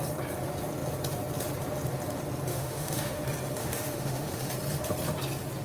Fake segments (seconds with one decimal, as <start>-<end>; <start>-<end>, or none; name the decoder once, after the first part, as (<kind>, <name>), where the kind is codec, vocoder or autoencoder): 2.5-3.2 (autoencoder, DAC-VAE); 3.6-4.5